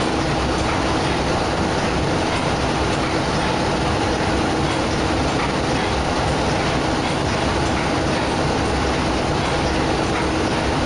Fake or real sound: real